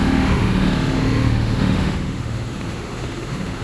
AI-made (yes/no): yes